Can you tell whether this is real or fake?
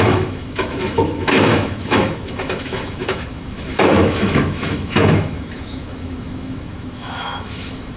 fake